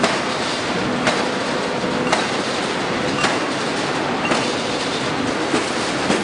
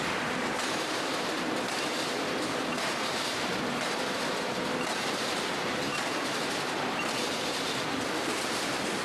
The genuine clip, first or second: first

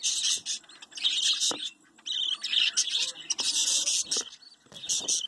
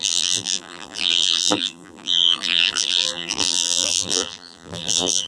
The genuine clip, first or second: first